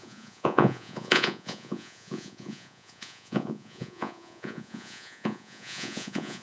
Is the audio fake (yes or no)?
yes